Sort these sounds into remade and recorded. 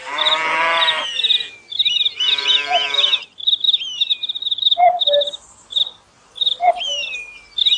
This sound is recorded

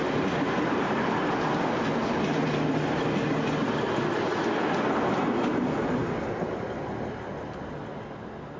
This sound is recorded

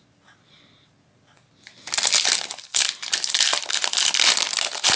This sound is recorded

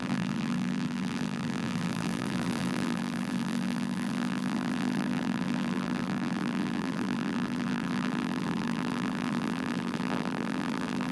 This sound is remade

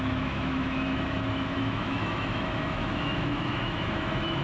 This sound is remade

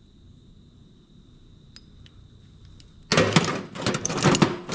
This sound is recorded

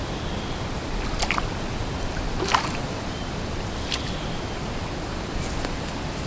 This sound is recorded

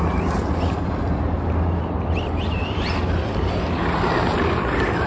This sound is recorded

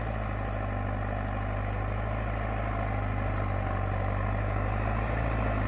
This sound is recorded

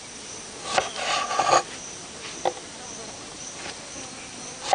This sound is recorded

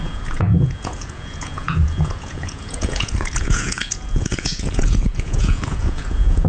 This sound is remade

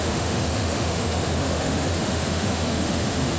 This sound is remade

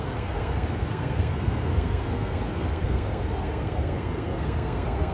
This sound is remade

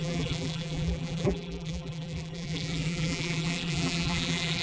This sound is remade